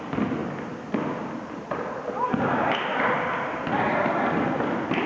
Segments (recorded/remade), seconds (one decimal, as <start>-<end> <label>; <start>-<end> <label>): 0.0-5.1 recorded

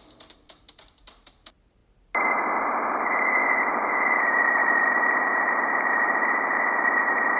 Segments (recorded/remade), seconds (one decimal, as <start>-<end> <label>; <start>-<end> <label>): 0.0-7.4 recorded

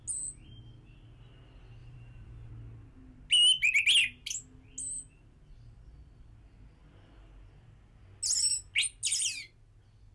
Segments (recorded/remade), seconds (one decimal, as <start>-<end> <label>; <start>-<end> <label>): 0.0-1.8 recorded; 1.8-2.5 remade; 2.5-10.1 recorded

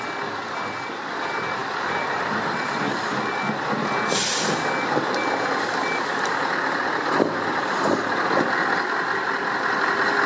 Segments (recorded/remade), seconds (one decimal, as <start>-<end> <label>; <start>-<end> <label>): 0.0-1.6 recorded; 1.6-3.4 remade; 3.4-10.3 recorded